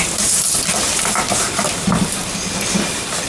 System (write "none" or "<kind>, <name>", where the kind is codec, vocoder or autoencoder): none